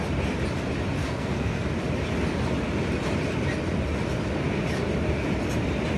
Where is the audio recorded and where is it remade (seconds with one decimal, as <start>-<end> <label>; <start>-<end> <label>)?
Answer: 0.0-1.0 recorded; 1.0-1.6 remade; 1.6-6.0 recorded